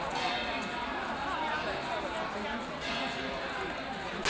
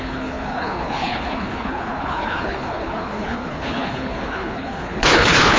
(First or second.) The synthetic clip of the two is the second